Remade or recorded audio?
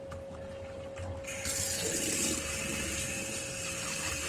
recorded